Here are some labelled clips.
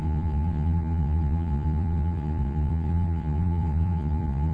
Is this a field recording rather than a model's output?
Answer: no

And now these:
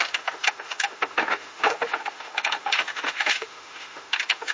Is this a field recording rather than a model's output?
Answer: no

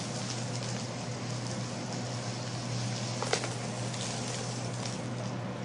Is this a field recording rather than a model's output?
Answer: yes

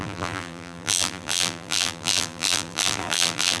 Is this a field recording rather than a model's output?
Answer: no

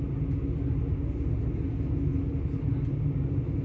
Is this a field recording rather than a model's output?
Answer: yes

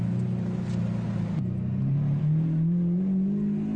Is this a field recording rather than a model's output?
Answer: yes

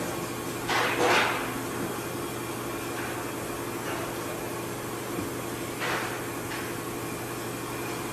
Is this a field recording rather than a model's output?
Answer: yes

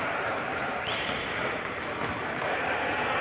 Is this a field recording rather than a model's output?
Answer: no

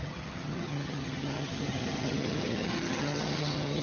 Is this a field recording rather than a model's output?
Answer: no